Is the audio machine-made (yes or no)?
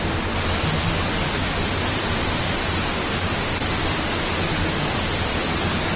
no